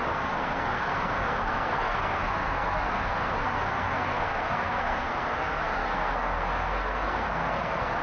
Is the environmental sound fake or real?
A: fake